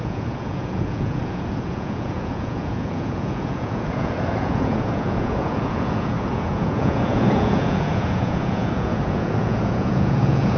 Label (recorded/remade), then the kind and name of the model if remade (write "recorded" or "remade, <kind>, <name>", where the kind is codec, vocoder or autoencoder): remade, vocoder, Vocos